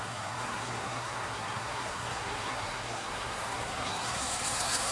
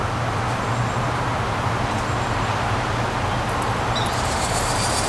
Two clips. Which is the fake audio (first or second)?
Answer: first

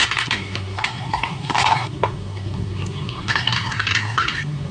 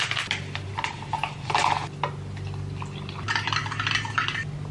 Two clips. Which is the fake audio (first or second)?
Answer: first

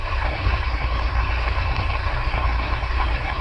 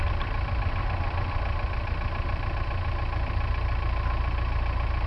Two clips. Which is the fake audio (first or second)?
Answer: first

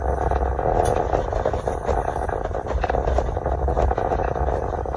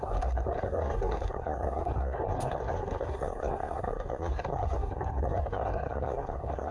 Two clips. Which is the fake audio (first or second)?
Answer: second